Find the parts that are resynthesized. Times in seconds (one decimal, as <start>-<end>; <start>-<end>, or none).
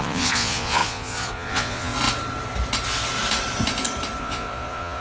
0.0-1.9; 4.2-5.0